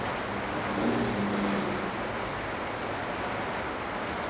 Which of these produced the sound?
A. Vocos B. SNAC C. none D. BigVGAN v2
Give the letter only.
C